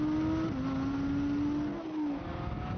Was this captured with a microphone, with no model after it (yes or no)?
yes